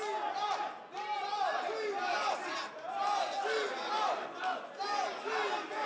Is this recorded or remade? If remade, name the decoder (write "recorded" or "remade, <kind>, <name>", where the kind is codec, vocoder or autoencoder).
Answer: recorded